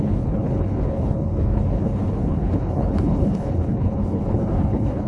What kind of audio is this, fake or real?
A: fake